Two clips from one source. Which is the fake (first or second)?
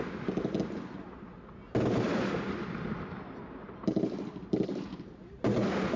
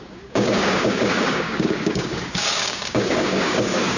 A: second